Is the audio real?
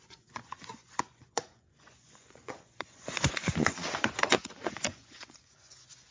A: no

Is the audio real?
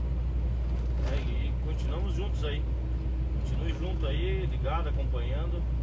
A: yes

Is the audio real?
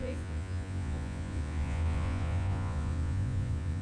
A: no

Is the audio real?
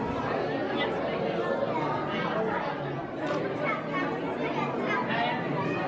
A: yes